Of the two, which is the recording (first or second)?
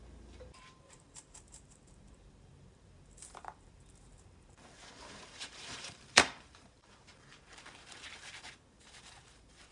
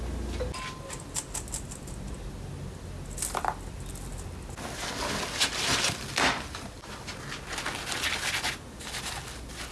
second